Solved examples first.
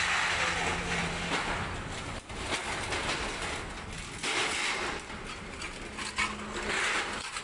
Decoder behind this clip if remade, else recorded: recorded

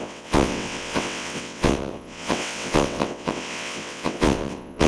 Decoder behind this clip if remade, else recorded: remade, vocoder, WaveNeXt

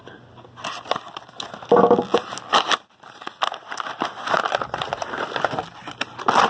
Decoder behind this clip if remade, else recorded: recorded